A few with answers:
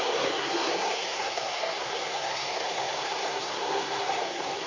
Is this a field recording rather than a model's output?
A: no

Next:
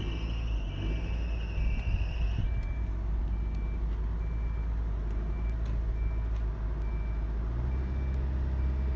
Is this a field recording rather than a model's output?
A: yes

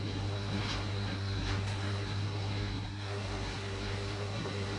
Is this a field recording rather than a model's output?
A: no